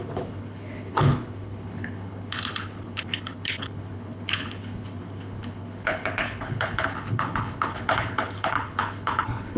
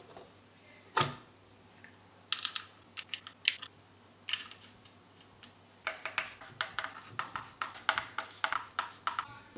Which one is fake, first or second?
first